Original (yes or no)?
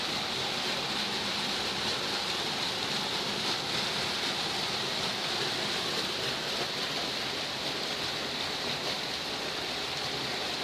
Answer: yes